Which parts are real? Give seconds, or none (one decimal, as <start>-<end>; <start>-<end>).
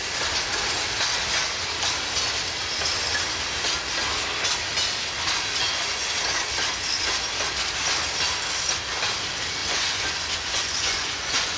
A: 0.0-5.6; 6.1-9.6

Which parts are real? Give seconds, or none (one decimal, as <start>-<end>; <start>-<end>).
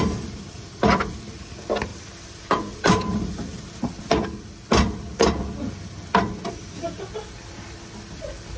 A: 0.8-1.9; 3.6-8.6